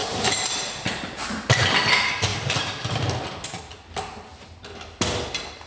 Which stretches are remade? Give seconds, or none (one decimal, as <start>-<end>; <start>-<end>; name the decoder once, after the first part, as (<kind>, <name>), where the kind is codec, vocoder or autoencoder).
0.0-1.8 (vocoder, BigVGAN v2); 2.3-3.6